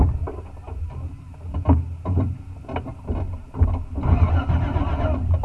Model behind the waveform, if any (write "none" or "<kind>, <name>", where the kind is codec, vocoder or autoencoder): none